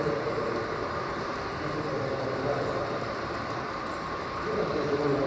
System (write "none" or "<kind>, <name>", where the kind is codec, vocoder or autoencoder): none